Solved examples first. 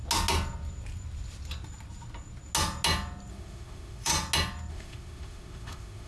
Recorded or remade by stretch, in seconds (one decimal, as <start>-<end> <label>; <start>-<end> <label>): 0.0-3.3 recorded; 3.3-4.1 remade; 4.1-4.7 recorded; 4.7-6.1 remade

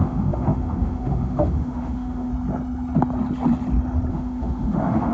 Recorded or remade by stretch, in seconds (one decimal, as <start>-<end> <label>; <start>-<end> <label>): 0.0-2.3 remade; 2.3-4.1 recorded; 4.1-5.1 remade

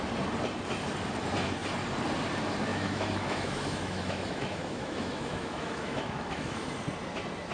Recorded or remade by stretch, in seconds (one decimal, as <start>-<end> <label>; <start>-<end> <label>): 0.0-2.7 recorded; 2.7-6.7 remade; 6.7-7.5 recorded